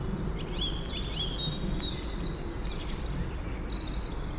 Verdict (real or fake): real